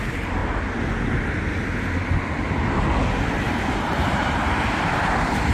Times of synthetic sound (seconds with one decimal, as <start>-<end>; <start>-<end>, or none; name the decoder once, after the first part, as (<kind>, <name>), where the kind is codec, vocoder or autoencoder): 0.0-0.4 (vocoder, BigVGAN v2); 3.4-5.5